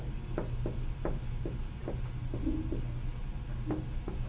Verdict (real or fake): real